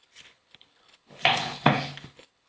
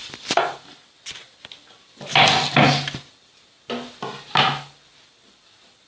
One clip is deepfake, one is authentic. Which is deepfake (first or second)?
first